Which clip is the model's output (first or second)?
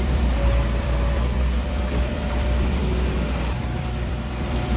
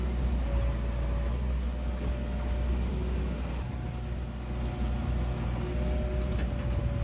first